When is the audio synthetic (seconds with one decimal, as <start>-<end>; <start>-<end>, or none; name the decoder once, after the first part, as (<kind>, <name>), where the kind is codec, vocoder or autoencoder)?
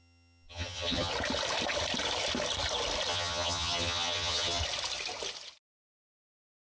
0.0-1.1 (vocoder, HiFi-GAN); 3.1-4.6